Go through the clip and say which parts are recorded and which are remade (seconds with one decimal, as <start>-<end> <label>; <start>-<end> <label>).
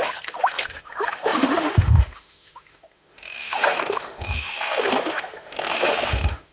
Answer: 0.0-6.5 remade